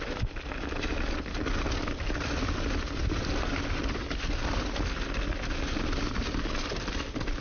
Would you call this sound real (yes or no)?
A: yes